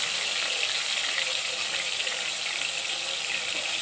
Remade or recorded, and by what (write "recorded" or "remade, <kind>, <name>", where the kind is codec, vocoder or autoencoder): recorded